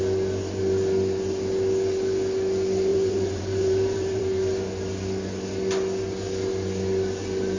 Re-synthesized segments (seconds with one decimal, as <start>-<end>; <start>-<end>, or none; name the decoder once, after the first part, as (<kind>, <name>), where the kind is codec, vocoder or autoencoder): 2.9-4.2 (vocoder, BigVGAN v2)